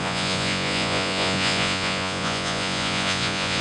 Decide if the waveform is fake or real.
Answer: fake